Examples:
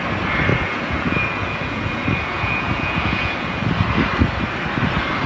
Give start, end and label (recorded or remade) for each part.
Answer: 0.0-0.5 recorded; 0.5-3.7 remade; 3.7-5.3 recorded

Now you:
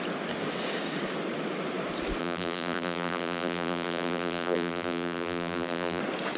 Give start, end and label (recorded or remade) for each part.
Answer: 0.0-2.2 recorded; 2.2-6.0 remade; 6.0-6.4 recorded

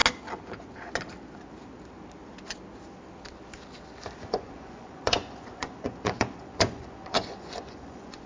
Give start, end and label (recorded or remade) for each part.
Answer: 0.0-4.2 recorded; 4.2-8.3 remade

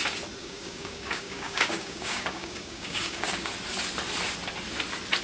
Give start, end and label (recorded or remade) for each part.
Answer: 0.0-0.4 recorded; 0.4-3.5 remade; 3.5-5.2 recorded

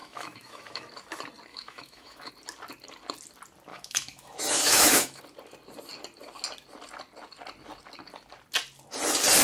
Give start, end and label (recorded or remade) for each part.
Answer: 0.0-0.9 remade; 0.9-1.5 recorded; 1.5-2.3 remade; 2.3-3.7 recorded; 3.7-5.2 remade; 5.2-9.4 recorded

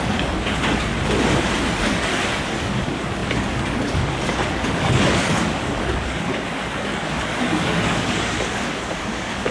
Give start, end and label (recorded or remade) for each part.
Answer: 0.0-0.9 remade; 0.9-1.7 recorded; 1.7-2.1 remade; 2.1-2.6 recorded; 2.6-9.5 remade

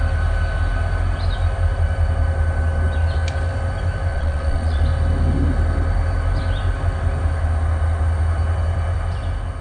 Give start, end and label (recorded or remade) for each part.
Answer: 0.0-4.1 recorded; 4.1-4.8 remade; 4.8-9.6 recorded